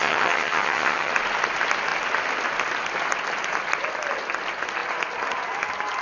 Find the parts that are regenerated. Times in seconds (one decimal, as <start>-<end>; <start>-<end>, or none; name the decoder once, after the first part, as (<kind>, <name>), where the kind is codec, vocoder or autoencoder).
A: 0.0-1.1 (vocoder, HiFi-GAN)

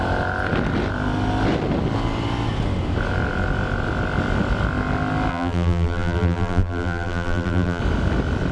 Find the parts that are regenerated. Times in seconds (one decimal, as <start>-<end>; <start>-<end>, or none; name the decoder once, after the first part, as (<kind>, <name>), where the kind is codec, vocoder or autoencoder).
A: 5.3-7.8 (vocoder, BigVGAN v2)

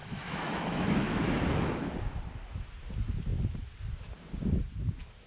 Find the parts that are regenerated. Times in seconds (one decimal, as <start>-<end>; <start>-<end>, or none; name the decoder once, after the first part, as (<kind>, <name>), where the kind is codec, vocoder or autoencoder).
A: 0.0-1.7 (autoencoder, DAC-VAE)

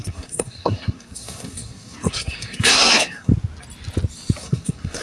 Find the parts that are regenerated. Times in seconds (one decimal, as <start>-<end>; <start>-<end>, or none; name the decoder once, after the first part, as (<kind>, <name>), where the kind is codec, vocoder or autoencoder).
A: 0.0-3.3 (codec, SNAC); 4.4-5.0